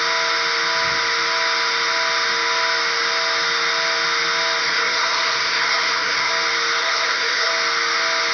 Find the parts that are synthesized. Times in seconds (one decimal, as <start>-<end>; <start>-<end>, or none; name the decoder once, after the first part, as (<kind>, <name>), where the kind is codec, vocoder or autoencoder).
4.6-6.3 (codec, SNAC); 6.8-7.5